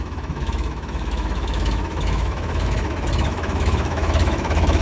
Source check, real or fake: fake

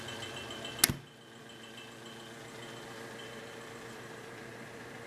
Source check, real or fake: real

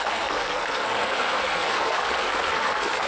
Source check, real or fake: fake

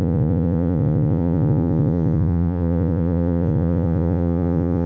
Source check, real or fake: fake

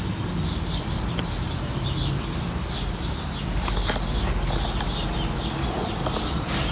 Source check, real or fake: real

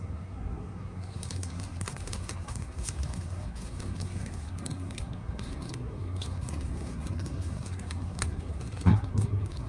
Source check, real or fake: fake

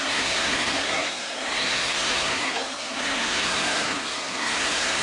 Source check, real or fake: fake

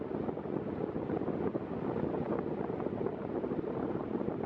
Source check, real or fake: real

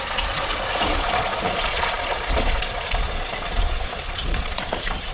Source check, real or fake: fake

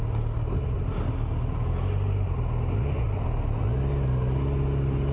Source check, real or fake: real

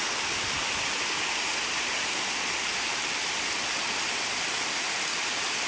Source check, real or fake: real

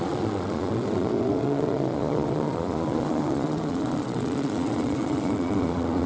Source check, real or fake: fake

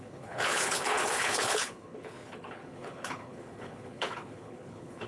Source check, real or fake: fake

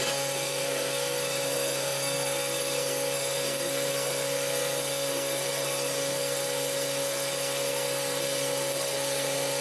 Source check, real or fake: fake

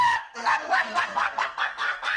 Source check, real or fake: fake